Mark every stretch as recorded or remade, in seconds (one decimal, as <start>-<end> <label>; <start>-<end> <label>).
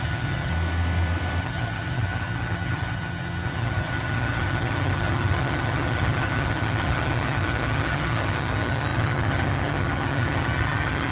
0.0-0.5 remade; 0.5-1.4 recorded; 1.4-11.1 remade